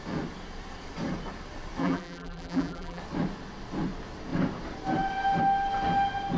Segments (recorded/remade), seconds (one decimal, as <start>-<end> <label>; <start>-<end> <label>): 0.0-1.8 recorded; 1.8-3.0 remade; 3.0-6.4 recorded